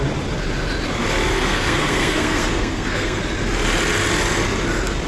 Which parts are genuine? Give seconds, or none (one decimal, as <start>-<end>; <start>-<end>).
0.0-1.3; 3.2-5.1

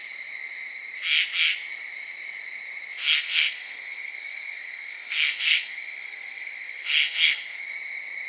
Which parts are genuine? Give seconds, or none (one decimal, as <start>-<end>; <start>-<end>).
0.0-3.0; 7.7-8.3

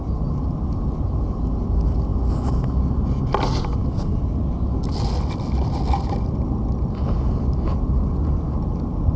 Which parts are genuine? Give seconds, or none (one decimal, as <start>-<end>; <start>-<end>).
0.0-9.2

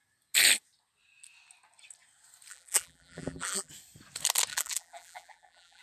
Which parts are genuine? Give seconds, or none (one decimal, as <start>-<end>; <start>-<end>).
0.0-2.5; 3.7-4.5

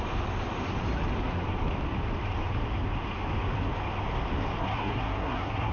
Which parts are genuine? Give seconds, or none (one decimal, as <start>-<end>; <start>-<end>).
0.0-4.6

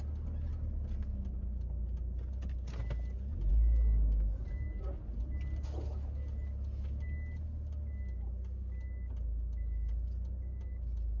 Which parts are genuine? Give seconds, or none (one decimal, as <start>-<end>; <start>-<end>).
0.0-11.2